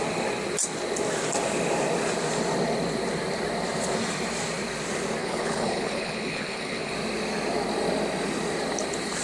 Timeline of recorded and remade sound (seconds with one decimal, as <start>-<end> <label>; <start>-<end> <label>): 0.0-5.2 recorded; 5.2-6.9 remade; 6.9-9.2 recorded